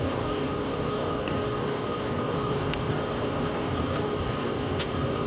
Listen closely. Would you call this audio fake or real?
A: fake